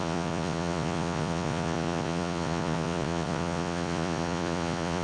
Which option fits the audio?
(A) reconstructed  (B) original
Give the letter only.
A